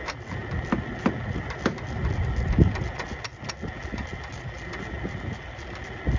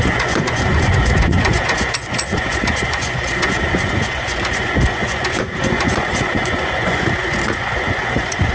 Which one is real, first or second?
first